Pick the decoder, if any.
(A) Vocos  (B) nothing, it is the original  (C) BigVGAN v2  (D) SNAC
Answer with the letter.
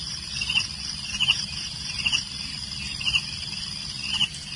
B